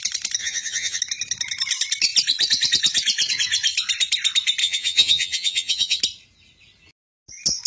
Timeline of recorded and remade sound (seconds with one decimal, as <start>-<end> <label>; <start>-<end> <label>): 0.0-0.4 recorded; 0.4-1.0 remade; 1.0-4.6 recorded; 4.6-6.0 remade; 6.0-7.7 recorded